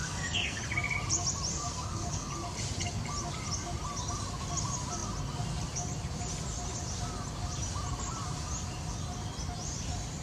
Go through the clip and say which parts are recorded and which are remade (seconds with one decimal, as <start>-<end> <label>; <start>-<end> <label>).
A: 0.0-0.6 remade; 0.6-1.5 recorded; 1.5-2.3 remade; 2.3-10.2 recorded